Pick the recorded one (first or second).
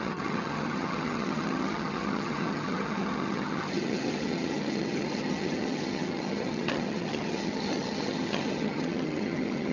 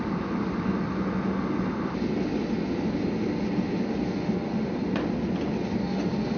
second